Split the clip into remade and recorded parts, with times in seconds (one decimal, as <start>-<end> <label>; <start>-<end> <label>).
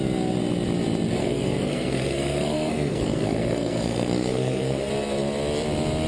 0.0-1.2 recorded; 1.2-4.9 remade; 4.9-6.1 recorded